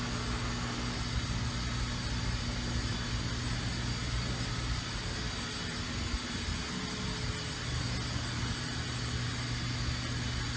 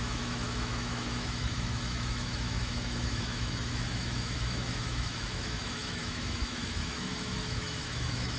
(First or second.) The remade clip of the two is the second